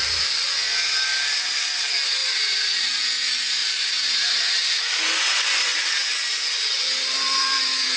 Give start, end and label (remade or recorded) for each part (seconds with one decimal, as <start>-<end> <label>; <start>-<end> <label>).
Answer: 0.0-2.2 recorded; 2.2-3.0 remade; 3.0-3.6 recorded; 3.6-5.0 remade; 5.0-8.0 recorded